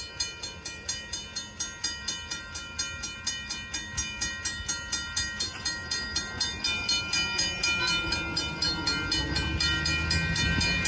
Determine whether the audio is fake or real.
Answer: real